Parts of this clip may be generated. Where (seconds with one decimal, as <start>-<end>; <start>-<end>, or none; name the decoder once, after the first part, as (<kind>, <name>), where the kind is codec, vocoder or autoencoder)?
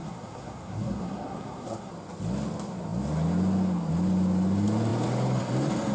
0.0-1.9 (codec, SNAC)